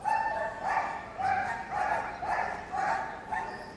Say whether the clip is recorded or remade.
recorded